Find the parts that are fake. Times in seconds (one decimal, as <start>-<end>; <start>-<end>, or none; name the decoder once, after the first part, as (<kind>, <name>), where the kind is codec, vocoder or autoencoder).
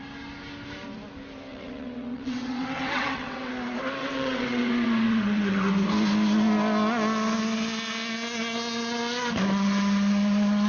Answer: 1.5-3.5 (vocoder, WaveNeXt); 4.0-5.7